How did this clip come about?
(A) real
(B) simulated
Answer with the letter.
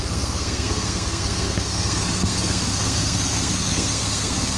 B